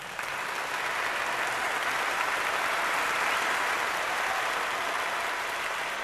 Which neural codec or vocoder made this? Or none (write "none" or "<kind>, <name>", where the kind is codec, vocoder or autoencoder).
none